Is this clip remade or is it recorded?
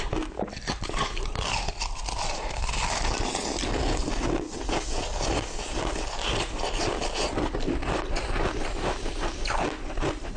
recorded